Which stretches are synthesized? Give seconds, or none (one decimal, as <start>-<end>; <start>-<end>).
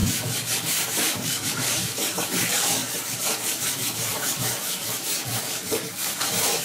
0.0-6.6